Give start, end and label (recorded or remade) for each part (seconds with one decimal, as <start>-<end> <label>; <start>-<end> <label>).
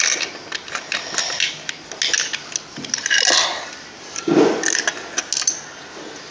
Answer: 0.0-3.5 recorded; 3.5-4.3 remade; 4.3-6.3 recorded